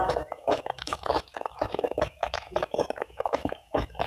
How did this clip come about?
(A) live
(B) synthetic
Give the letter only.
B